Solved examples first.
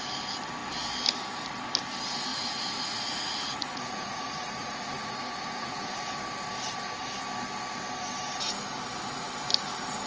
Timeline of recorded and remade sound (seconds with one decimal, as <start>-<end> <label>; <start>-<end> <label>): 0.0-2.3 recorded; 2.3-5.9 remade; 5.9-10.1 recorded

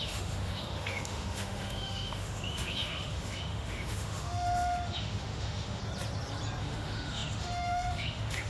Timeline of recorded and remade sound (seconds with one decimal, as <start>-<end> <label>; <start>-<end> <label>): 0.0-5.8 remade; 5.8-6.6 recorded; 6.6-8.5 remade

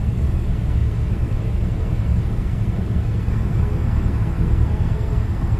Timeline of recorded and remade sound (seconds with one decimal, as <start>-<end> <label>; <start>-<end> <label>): 0.0-5.6 remade

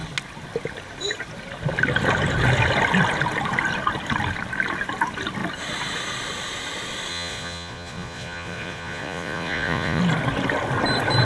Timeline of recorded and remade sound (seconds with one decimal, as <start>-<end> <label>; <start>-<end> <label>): 0.0-7.1 recorded; 7.1-10.0 remade; 10.0-11.2 recorded

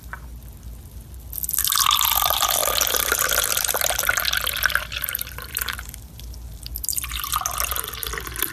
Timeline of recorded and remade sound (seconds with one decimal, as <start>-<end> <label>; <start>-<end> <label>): 0.0-8.5 recorded

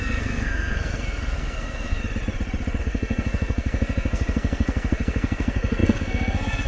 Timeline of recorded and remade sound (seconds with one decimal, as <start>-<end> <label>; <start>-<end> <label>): 0.0-2.0 remade; 2.0-2.8 recorded; 2.8-6.7 remade

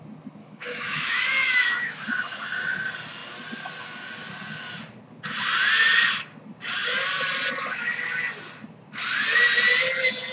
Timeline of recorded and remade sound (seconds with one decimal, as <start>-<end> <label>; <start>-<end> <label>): 0.0-0.4 recorded; 0.4-2.0 remade; 2.0-10.3 recorded

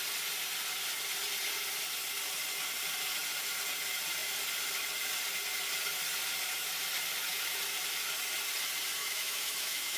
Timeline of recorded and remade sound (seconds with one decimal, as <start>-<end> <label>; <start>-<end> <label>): 0.0-9.0 recorded; 9.0-10.0 remade